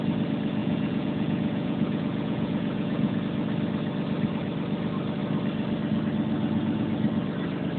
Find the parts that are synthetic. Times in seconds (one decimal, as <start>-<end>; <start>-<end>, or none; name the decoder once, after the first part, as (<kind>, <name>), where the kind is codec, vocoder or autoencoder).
0.6-3.2 (vocoder, Vocos)